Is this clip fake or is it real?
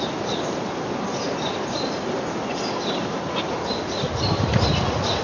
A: real